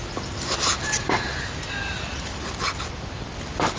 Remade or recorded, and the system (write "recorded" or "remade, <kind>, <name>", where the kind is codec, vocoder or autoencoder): recorded